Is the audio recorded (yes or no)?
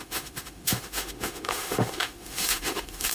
no